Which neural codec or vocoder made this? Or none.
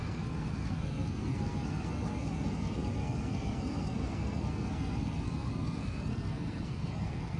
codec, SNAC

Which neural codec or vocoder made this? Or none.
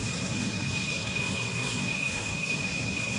codec, SNAC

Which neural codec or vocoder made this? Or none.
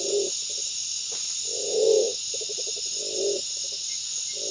none